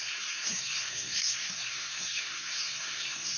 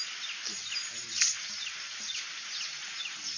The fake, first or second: first